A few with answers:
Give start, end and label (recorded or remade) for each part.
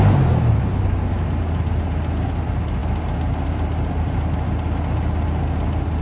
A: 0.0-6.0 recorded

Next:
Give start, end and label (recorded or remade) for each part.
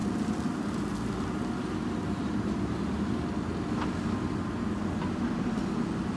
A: 0.0-6.2 recorded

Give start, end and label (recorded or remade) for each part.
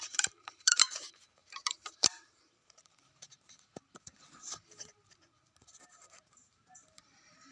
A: 0.0-7.5 remade